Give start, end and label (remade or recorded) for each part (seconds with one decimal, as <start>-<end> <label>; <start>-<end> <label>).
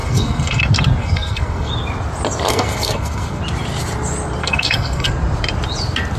0.0-0.6 remade; 0.6-1.0 recorded; 1.0-1.7 remade; 1.7-2.5 recorded; 2.5-3.4 remade; 3.4-4.4 recorded; 4.4-5.1 remade; 5.1-6.2 recorded